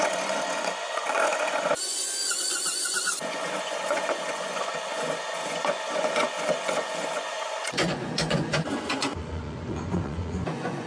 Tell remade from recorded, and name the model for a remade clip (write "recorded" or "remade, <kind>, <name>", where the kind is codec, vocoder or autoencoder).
remade, vocoder, Vocos